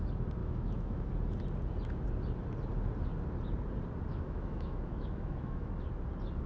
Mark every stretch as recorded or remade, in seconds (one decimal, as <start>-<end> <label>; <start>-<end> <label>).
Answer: 0.0-0.4 recorded; 0.4-1.1 remade; 1.1-4.1 recorded; 4.1-5.7 remade; 5.7-6.5 recorded